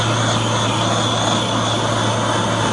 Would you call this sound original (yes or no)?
yes